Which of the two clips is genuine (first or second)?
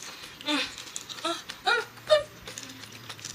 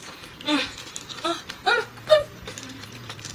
first